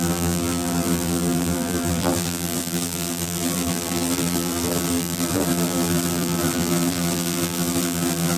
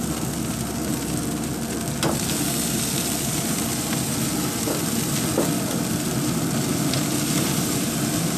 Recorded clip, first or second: second